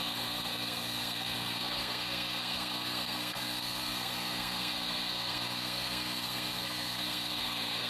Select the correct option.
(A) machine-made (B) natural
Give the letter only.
A